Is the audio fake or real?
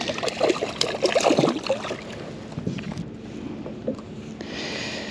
real